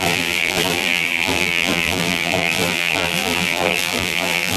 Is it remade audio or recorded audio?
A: remade